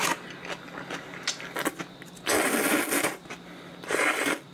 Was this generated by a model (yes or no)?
no